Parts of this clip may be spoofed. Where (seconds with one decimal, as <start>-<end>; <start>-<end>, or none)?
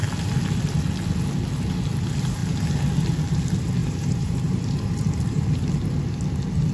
3.8-5.4